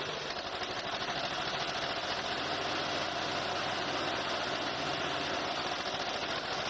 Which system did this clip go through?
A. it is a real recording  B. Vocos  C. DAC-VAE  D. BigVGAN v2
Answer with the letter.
A